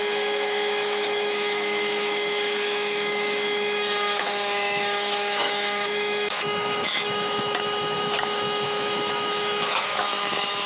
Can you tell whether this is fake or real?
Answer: fake